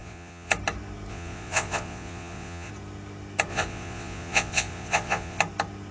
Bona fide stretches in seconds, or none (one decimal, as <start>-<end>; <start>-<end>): 0.5-1.1; 2.7-3.5; 5.4-5.9